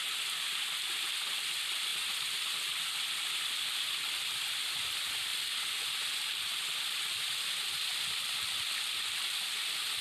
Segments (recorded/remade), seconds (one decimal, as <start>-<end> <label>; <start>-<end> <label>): 0.0-10.0 recorded